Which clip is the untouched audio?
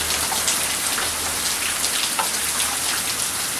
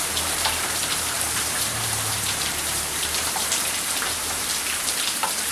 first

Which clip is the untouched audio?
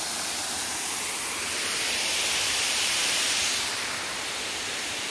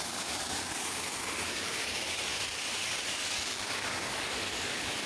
first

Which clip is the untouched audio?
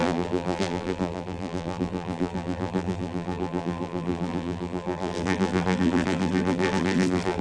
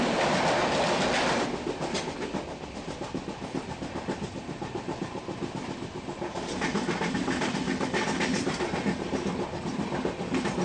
second